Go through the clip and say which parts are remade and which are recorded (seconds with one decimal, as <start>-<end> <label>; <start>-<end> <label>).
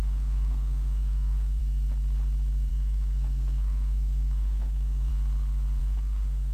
0.0-1.6 remade; 1.6-2.7 recorded; 2.7-5.1 remade; 5.1-5.8 recorded; 5.8-6.5 remade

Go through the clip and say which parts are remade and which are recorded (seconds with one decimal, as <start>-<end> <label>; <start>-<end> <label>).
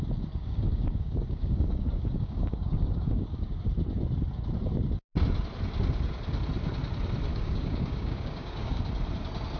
0.0-0.4 recorded; 0.4-3.6 remade; 3.6-7.3 recorded; 7.3-8.8 remade; 8.8-9.6 recorded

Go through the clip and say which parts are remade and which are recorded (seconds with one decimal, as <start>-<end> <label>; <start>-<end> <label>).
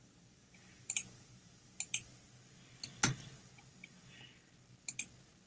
0.0-2.1 remade; 2.1-5.5 recorded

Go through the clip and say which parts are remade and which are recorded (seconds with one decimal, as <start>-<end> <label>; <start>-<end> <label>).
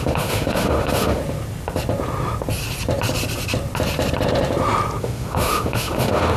0.0-1.2 remade; 1.2-5.0 recorded; 5.0-6.4 remade